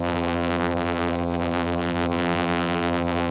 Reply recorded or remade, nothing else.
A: remade